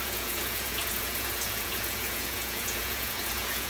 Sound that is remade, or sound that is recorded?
remade